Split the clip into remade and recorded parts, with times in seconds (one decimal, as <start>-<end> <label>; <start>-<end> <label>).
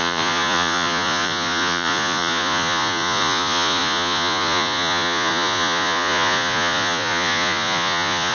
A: 0.0-8.3 remade